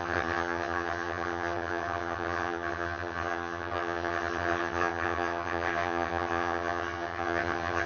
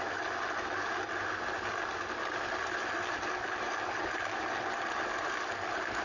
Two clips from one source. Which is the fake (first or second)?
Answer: first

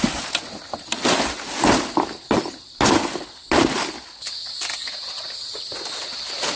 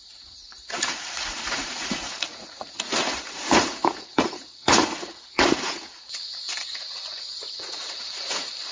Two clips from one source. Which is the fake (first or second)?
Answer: second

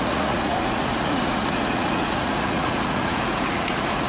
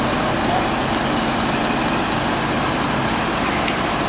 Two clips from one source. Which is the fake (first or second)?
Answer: first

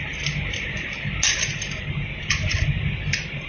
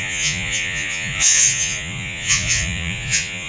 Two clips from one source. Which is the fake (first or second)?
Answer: second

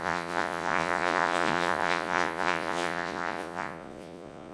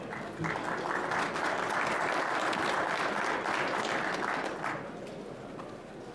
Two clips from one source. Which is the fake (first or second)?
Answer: first